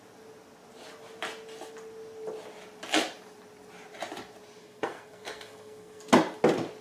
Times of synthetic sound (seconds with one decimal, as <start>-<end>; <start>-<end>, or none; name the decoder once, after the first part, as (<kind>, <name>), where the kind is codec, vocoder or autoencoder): 4.6-6.0 (codec, SNAC)